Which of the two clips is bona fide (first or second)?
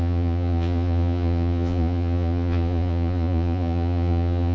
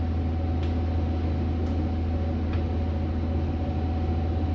second